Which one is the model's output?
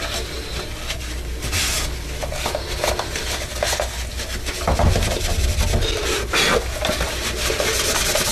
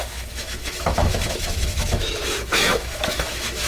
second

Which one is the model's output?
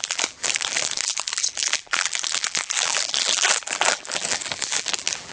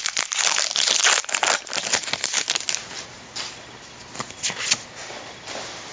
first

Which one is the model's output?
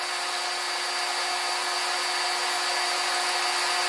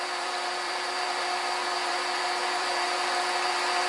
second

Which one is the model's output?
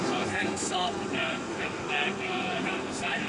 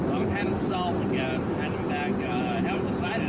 first